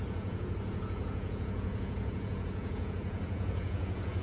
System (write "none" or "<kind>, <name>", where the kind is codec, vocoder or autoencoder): vocoder, Vocos